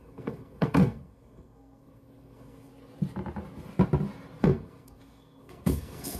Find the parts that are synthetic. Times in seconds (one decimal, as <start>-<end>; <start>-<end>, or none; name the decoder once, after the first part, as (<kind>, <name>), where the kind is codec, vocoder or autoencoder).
0.0-2.7 (codec, SNAC); 4.4-6.2

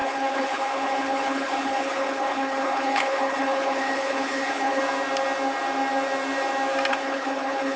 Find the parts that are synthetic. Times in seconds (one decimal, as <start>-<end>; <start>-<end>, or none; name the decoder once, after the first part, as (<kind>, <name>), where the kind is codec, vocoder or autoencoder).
0.0-4.8 (codec, HILCodec); 6.9-7.8

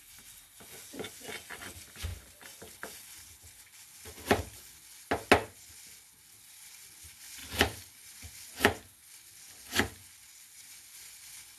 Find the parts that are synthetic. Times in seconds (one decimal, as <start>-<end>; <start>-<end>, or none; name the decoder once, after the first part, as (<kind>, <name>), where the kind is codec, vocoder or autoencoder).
7.4-8.1 (vocoder, BigVGAN v2)

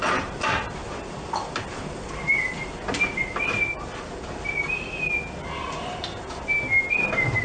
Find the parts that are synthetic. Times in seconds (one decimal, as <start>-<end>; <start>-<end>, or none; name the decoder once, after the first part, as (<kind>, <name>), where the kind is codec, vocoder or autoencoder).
none

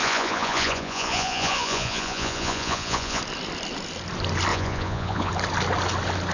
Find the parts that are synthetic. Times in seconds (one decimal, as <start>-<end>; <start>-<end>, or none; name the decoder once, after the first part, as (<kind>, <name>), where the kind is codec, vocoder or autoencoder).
0.0-3.2 (vocoder, Vocos); 4.5-5.3

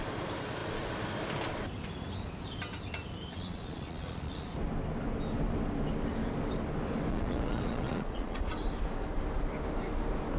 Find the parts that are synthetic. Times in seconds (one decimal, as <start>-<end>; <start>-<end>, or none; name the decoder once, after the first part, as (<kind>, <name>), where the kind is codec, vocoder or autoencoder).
3.3-4.5 (vocoder, Vocos); 7.1-8.5